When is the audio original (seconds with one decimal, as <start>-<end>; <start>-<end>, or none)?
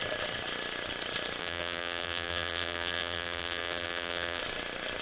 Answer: 0.0-1.4; 4.4-5.0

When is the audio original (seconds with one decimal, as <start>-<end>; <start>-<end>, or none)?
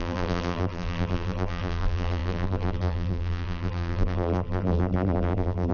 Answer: none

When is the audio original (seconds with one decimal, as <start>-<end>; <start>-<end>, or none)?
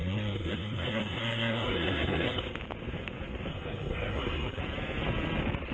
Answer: 2.4-3.5; 4.6-5.7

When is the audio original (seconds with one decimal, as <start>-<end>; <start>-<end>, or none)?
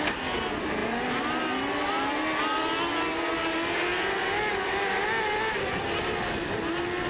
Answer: 0.0-7.1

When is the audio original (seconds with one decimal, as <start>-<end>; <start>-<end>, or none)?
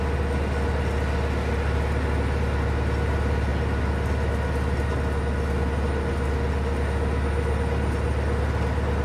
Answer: 0.0-9.0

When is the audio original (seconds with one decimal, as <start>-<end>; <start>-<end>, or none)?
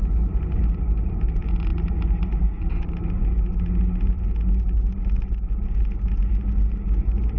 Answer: 0.0-7.4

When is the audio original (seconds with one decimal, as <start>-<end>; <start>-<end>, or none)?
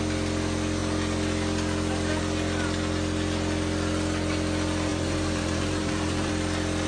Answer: 0.0-4.9; 6.3-6.9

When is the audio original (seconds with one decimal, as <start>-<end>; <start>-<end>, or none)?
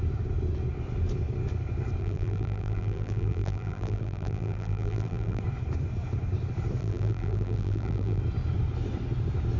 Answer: 0.0-2.0; 5.4-6.8; 8.2-9.6